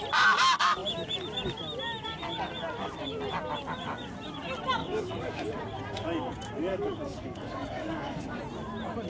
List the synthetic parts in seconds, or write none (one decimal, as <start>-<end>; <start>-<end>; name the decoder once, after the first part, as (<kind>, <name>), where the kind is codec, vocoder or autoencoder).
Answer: 4.8-5.6 (codec, DAC); 6.7-8.4